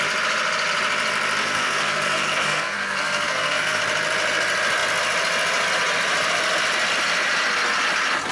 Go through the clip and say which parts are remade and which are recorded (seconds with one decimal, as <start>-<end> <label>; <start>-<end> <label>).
0.0-1.4 recorded; 1.4-3.8 remade; 3.8-8.3 recorded